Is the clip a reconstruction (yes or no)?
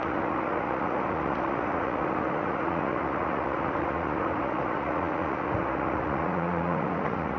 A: yes